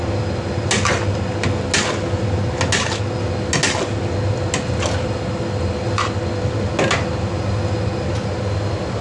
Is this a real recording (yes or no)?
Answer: yes